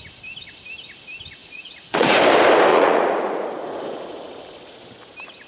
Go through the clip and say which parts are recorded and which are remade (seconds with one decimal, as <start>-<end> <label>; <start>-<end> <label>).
0.0-1.4 recorded; 1.4-2.2 remade; 2.2-2.7 recorded; 2.7-3.8 remade; 3.8-5.5 recorded